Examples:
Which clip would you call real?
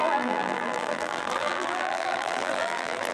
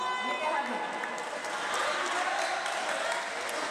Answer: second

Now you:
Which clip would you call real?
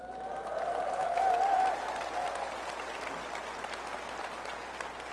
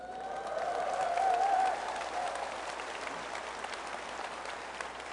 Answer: first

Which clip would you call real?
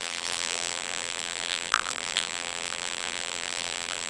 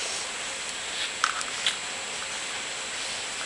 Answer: second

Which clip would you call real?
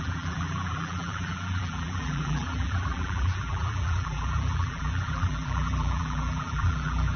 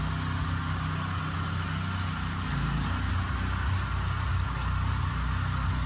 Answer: second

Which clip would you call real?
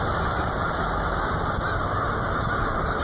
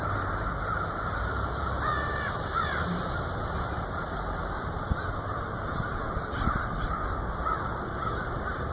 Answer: first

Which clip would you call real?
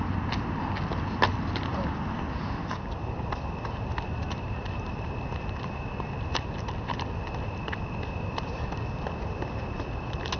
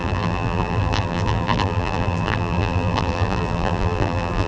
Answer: first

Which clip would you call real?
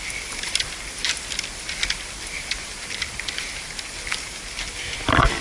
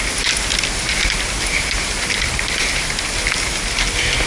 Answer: second